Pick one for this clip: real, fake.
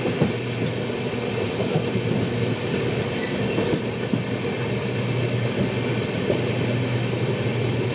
real